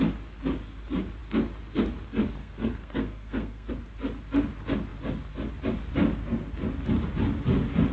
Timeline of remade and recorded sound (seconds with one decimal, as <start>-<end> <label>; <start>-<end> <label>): 0.0-2.4 recorded; 2.4-3.7 remade; 3.7-7.9 recorded